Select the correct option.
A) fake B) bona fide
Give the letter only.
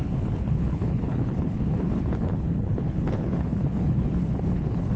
A